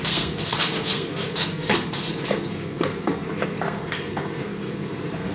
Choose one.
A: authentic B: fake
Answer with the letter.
B